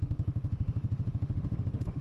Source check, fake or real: fake